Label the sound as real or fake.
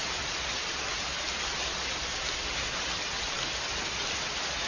real